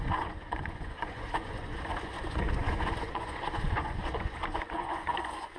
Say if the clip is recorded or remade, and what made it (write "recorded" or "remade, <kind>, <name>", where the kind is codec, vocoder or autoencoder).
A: remade, vocoder, Vocos